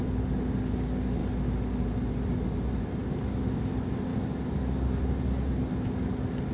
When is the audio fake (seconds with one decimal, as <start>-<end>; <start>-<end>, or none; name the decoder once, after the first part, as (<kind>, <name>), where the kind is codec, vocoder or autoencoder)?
none